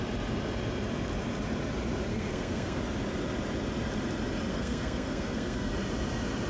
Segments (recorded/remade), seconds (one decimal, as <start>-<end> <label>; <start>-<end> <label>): 0.0-2.1 recorded; 2.1-2.8 remade; 2.8-4.5 recorded; 4.5-5.7 remade; 5.7-6.5 recorded